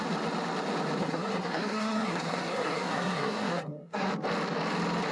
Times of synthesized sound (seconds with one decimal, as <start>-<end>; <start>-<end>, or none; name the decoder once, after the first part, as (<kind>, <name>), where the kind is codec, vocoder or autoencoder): 1.0-4.1 (codec, SNAC)

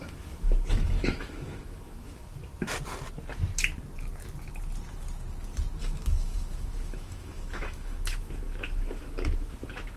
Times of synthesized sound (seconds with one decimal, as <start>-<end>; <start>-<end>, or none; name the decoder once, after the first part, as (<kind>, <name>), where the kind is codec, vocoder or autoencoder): 0.0-2.4 (autoencoder, DAC-VAE); 5.8-10.0

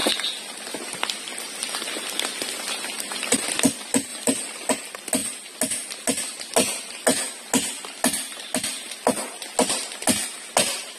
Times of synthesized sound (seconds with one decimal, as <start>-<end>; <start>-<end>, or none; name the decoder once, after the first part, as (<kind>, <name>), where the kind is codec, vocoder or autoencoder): 4.1-4.7 (vocoder, BigVGAN v2)